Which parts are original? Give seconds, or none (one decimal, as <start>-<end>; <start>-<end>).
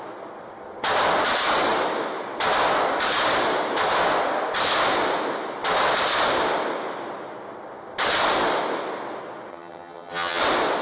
0.0-9.5; 10.4-10.8